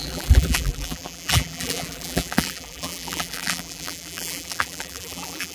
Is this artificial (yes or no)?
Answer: yes